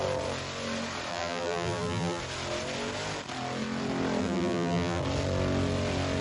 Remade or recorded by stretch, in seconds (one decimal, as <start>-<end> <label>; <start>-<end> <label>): 0.0-1.1 recorded; 1.1-2.2 remade; 2.2-4.2 recorded; 4.2-5.0 remade; 5.0-6.2 recorded